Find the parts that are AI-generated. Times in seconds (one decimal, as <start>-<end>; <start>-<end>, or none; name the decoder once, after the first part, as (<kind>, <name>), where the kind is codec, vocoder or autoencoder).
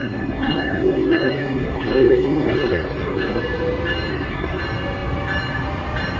0.0-3.4 (codec, SNAC); 4.1-4.6